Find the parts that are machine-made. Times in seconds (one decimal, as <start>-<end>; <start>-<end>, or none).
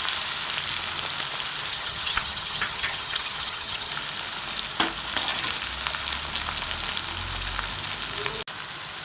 1.7-3.9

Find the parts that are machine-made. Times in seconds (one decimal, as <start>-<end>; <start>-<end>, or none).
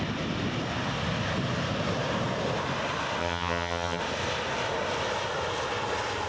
3.2-4.0